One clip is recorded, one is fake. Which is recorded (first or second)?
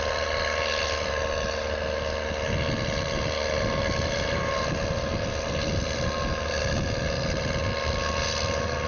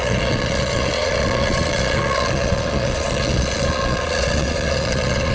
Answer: first